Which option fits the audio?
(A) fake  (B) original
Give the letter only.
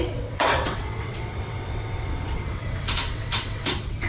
A